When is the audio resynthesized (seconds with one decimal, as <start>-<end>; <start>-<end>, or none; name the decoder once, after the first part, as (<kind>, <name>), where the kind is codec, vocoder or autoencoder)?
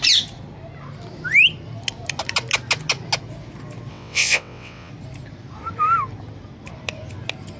3.9-4.9 (vocoder, WaveNeXt)